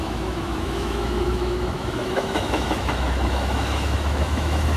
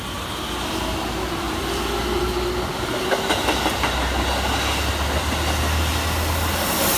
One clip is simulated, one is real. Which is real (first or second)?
second